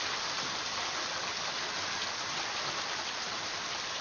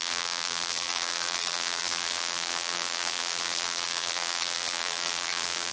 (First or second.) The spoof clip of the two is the second